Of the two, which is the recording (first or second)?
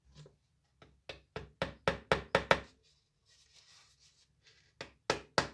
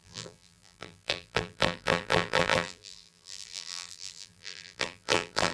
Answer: first